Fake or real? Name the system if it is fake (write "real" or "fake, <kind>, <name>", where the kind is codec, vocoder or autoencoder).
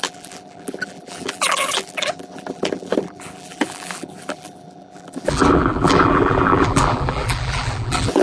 fake, vocoder, BigVGAN v2